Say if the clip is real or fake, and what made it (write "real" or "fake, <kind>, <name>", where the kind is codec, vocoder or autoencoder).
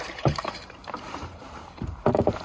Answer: fake, vocoder, BigVGAN v2